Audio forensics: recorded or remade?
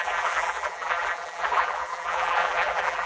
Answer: remade